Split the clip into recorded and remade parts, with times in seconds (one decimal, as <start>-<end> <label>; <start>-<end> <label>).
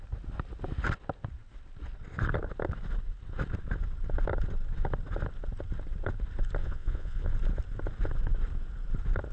0.0-6.6 recorded; 6.6-7.3 remade; 7.3-9.3 recorded